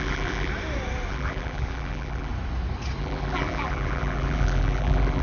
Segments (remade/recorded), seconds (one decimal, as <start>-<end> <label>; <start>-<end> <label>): 0.0-0.5 remade; 0.5-1.1 recorded; 1.1-2.3 remade; 2.3-3.0 recorded; 3.0-5.2 remade